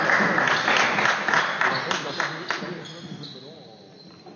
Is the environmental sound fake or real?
real